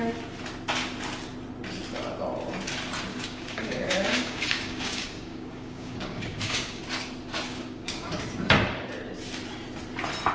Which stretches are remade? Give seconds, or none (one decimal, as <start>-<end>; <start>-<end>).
3.1-6.8; 7.5-8.1